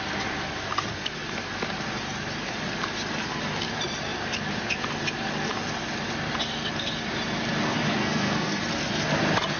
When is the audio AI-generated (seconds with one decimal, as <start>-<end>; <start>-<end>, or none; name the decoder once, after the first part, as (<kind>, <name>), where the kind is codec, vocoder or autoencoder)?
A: 8.0-8.6 (codec, SNAC)